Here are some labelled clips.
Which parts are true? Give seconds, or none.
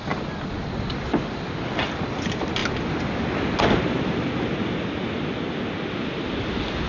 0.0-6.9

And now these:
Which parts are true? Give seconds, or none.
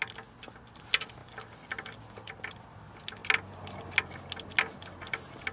0.0-5.5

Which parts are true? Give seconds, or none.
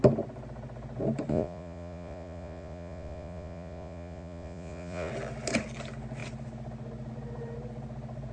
0.0-1.3; 5.1-8.3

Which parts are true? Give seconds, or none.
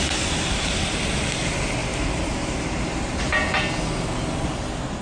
0.0-5.0